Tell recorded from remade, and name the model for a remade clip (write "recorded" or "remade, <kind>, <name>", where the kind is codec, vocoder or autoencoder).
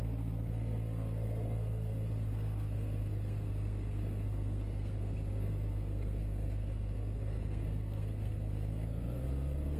remade, codec, SNAC